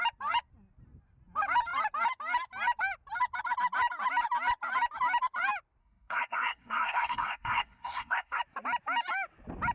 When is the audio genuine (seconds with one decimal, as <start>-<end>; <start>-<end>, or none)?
0.0-5.8; 8.4-9.7